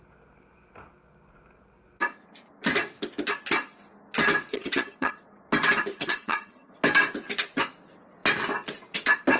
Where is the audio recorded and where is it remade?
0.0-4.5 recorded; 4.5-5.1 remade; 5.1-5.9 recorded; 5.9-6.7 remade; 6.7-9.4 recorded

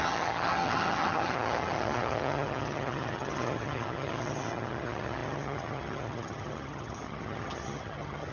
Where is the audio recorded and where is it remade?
0.0-8.3 remade

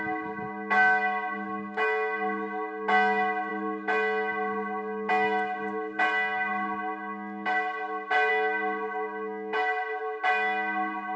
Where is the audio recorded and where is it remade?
0.0-11.2 recorded

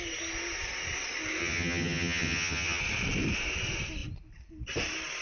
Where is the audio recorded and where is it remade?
0.0-1.4 recorded; 1.4-2.8 remade; 2.8-5.2 recorded

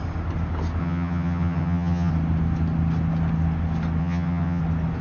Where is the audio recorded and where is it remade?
0.0-0.8 recorded; 0.8-2.1 remade; 2.1-4.0 recorded; 4.0-4.6 remade; 4.6-5.0 recorded

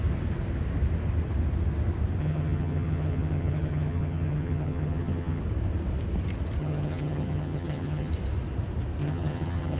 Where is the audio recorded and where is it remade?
0.0-2.2 recorded; 2.2-5.4 remade; 5.4-6.6 recorded; 6.6-8.1 remade; 8.1-9.0 recorded; 9.0-9.8 remade

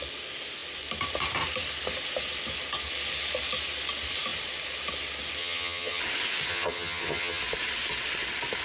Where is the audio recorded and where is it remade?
0.0-5.4 recorded; 5.4-6.0 remade; 6.0-6.5 recorded; 6.5-7.4 remade; 7.4-8.6 recorded

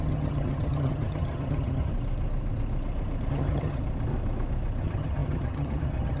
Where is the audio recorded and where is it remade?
0.0-1.9 remade; 1.9-3.3 recorded; 3.3-3.8 remade; 3.8-4.8 recorded; 4.8-6.2 remade